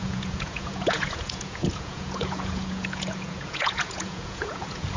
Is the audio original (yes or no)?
no